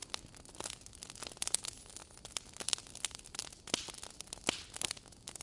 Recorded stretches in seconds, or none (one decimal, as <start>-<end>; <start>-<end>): 0.0-5.4